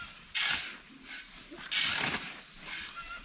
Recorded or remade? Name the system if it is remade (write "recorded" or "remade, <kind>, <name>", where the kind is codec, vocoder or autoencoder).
recorded